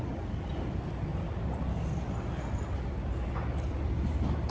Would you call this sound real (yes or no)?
yes